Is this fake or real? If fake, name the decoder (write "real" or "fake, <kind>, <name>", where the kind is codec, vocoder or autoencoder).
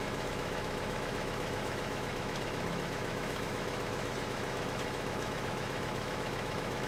fake, autoencoder, DAC-VAE